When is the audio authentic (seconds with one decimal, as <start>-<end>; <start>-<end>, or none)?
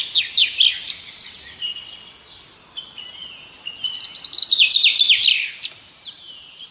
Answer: 0.0-5.3